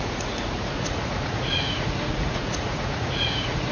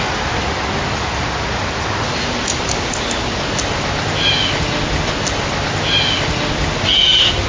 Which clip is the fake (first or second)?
first